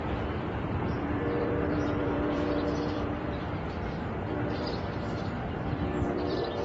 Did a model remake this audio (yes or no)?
yes